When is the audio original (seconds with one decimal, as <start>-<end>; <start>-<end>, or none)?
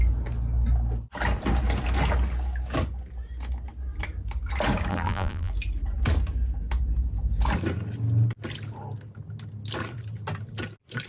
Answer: 0.0-4.9; 5.5-11.1